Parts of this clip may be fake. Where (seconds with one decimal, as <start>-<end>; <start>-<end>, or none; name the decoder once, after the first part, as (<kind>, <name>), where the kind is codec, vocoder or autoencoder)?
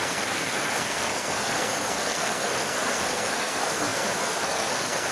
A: 0.0-5.1 (codec, SNAC)